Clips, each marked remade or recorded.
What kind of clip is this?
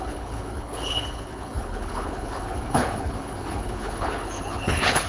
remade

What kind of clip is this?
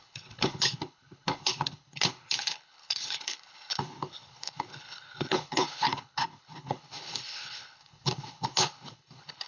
remade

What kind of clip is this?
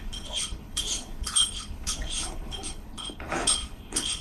remade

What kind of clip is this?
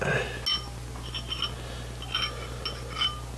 recorded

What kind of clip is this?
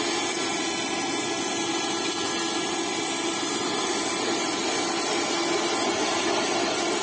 recorded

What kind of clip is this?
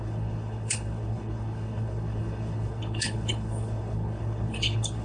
remade